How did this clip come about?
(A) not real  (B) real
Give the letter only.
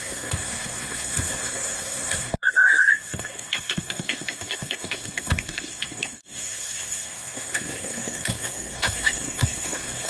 A